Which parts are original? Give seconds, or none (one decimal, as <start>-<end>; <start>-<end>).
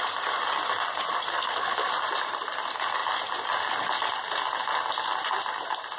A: 0.0-1.3; 1.9-6.0